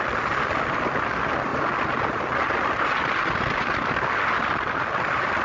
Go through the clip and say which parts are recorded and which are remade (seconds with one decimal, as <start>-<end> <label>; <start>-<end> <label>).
0.0-5.4 recorded